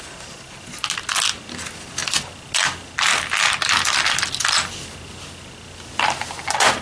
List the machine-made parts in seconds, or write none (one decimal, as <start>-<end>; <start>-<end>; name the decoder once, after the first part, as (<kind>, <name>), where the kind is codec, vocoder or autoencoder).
none